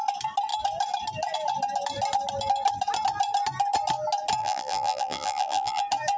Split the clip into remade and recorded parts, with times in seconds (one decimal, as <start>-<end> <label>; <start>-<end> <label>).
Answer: 0.0-4.4 recorded; 4.4-5.8 remade; 5.8-6.2 recorded